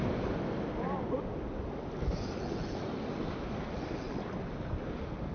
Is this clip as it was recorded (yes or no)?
yes